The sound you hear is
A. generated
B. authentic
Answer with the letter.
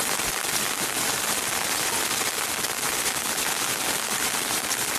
B